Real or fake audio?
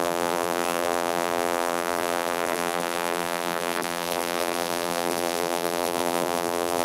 fake